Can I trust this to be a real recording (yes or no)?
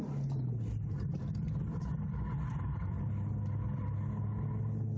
yes